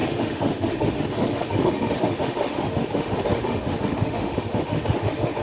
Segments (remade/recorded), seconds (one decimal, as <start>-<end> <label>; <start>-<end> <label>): 0.0-5.4 remade